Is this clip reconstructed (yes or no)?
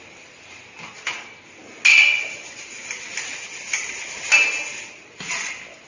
no